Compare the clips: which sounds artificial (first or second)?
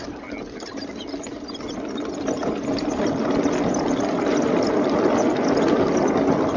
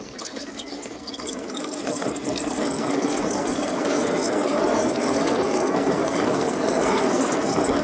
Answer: second